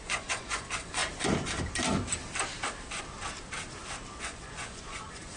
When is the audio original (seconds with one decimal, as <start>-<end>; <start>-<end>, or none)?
1.0-4.2